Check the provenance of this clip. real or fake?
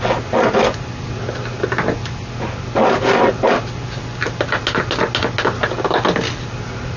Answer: real